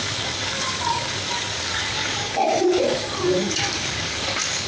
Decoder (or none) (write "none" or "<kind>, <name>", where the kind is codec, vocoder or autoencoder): codec, DAC